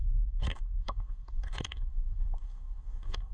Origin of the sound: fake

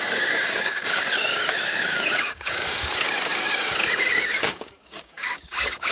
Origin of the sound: fake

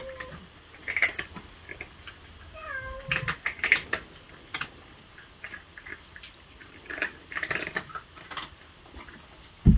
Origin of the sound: real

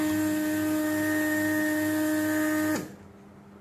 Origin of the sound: real